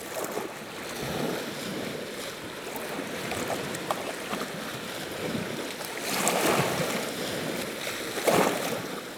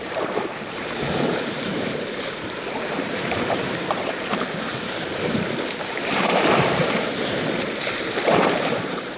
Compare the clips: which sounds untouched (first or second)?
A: first